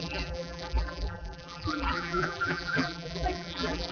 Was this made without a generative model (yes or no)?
no